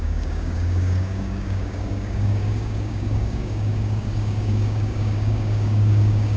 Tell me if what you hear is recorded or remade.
remade